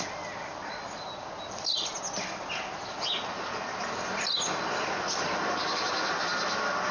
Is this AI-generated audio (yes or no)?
no